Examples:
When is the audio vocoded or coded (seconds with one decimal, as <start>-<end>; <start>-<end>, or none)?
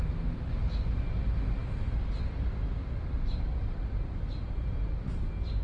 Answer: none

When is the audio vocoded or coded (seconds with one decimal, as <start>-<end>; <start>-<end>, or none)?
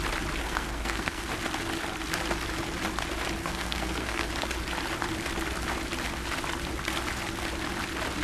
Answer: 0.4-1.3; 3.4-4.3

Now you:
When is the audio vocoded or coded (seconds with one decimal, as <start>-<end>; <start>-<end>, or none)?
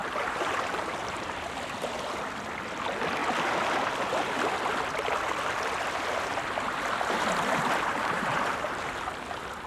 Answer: 0.0-1.5; 7.9-9.0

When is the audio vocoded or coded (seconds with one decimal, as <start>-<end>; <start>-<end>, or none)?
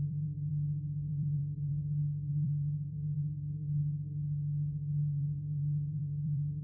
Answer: 0.0-0.5; 1.1-1.7; 2.3-3.8; 5.0-6.6